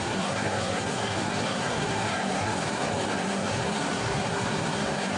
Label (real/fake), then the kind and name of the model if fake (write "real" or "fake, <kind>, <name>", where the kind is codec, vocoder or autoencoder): fake, codec, SNAC